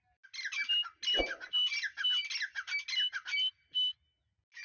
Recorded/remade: recorded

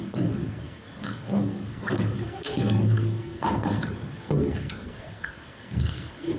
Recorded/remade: remade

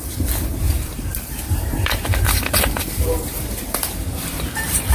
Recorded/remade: remade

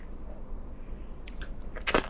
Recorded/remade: recorded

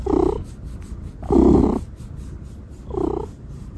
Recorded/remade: recorded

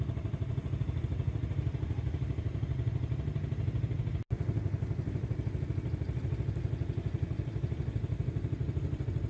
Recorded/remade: recorded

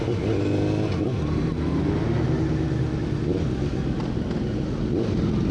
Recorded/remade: recorded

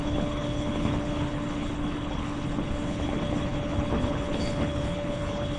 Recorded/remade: remade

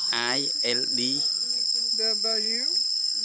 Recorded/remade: remade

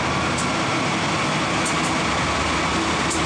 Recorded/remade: recorded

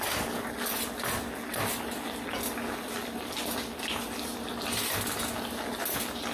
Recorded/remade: recorded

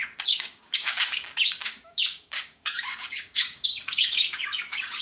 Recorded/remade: remade